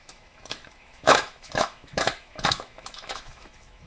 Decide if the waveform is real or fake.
fake